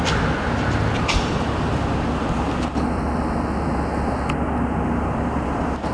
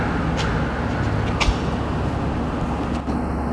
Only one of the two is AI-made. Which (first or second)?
first